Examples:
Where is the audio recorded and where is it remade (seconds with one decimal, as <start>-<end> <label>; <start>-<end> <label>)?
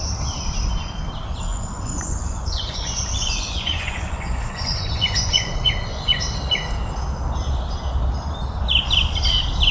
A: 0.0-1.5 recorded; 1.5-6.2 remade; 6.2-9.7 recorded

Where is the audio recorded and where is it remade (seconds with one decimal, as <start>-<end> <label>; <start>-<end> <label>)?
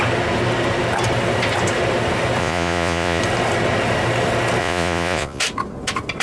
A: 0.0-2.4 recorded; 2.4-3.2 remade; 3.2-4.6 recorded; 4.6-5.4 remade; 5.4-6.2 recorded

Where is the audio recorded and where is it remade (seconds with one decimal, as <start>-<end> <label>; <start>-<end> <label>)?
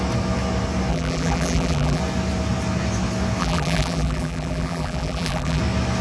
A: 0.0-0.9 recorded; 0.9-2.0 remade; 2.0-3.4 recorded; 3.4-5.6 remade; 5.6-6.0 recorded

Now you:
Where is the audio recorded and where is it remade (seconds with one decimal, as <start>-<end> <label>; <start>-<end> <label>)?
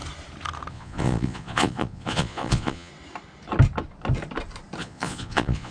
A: 0.0-0.7 recorded; 0.7-2.9 remade; 2.9-4.8 recorded; 4.8-5.7 remade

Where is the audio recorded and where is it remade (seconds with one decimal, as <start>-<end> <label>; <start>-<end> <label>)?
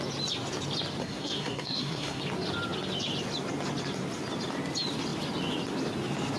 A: 0.0-1.0 recorded; 1.0-2.2 remade; 2.2-6.4 recorded